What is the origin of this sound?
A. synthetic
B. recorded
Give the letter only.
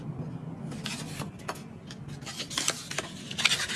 B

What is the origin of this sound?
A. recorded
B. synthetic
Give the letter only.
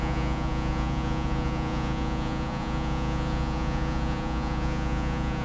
B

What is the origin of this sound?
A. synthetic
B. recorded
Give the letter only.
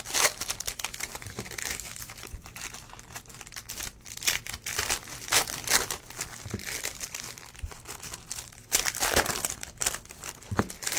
A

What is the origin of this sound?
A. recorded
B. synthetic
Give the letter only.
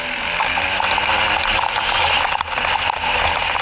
A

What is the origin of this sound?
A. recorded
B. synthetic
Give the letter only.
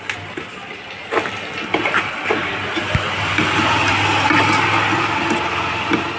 A